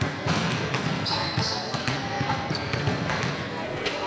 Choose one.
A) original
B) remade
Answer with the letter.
B